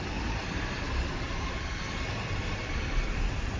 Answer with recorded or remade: remade